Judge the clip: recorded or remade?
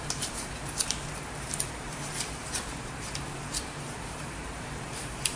remade